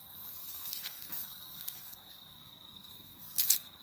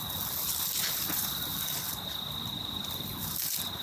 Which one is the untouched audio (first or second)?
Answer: second